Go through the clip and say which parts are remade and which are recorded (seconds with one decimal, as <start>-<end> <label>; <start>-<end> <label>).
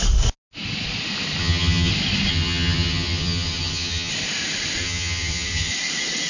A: 0.0-1.4 recorded; 1.4-1.9 remade; 1.9-2.3 recorded; 2.3-4.1 remade; 4.1-4.8 recorded; 4.8-5.7 remade; 5.7-6.3 recorded